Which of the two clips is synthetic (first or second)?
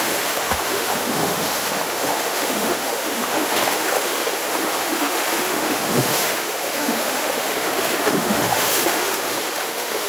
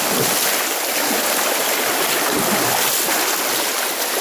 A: first